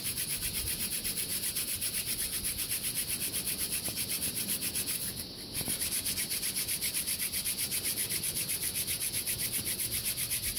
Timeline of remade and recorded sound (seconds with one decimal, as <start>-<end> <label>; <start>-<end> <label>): 0.0-10.6 recorded